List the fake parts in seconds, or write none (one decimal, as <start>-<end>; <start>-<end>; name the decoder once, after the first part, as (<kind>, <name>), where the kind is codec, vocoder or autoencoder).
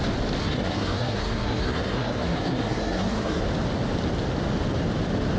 0.4-3.4 (codec, SNAC)